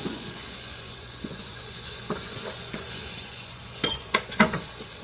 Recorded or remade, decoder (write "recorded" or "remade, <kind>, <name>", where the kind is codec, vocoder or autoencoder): remade, vocoder, Vocos